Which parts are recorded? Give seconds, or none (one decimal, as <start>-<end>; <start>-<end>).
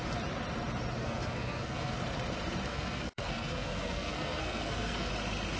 0.0-1.0; 1.9-2.7; 5.1-5.6